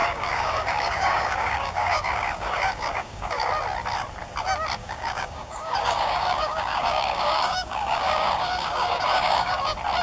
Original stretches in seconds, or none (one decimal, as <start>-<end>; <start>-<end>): 3.5-4.8; 9.6-10.0